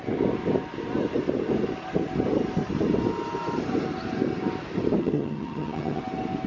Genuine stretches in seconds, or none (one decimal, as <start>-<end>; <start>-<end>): 0.0-5.0; 6.0-6.5